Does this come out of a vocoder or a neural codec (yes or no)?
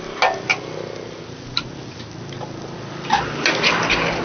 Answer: no